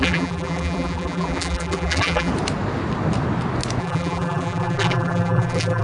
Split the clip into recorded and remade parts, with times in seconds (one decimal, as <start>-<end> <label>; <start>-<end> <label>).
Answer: 0.0-2.3 remade; 2.3-3.8 recorded; 3.8-5.8 remade